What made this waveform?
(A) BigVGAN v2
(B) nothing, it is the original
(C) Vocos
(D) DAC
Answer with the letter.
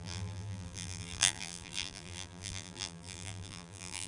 A